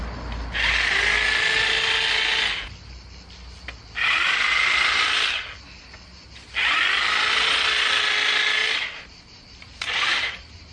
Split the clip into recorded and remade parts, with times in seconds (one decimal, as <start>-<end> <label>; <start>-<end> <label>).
0.0-8.6 recorded; 8.6-10.7 remade